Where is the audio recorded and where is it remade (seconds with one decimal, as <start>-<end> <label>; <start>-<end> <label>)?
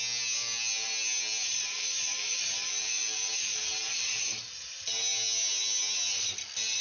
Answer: 0.0-1.5 recorded; 1.5-4.9 remade; 4.9-6.8 recorded